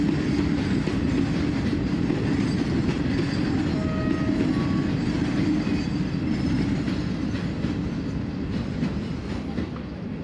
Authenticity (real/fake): real